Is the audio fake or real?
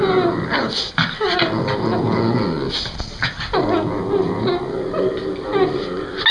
real